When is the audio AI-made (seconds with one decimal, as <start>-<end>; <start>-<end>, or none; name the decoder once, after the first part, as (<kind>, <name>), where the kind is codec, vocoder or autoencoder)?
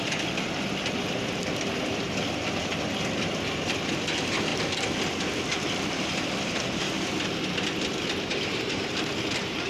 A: 0.0-4.5 (vocoder, BigVGAN v2); 5.7-9.7